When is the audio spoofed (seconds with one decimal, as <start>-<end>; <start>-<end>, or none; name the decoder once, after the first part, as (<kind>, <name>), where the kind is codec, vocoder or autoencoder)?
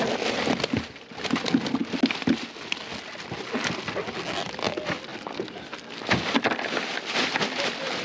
none